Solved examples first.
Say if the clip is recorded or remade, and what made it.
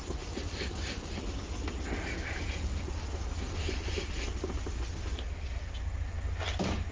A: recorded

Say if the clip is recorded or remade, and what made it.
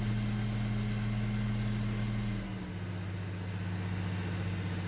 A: recorded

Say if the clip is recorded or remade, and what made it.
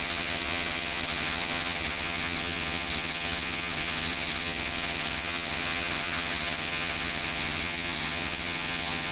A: remade, vocoder, HiFi-GAN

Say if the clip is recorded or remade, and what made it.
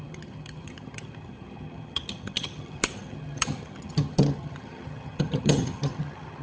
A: remade, vocoder, HiFi-GAN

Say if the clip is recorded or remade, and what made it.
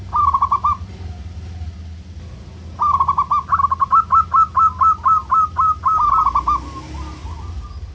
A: recorded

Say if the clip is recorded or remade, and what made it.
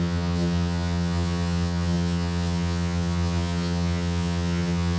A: remade, vocoder, HiFi-GAN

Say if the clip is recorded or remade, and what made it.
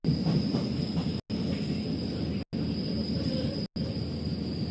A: recorded